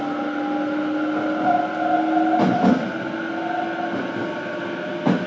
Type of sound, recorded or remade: recorded